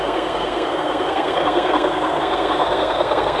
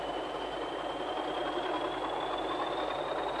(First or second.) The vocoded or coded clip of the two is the first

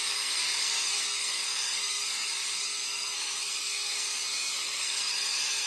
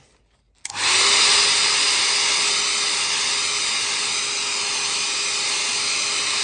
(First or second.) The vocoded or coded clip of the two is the first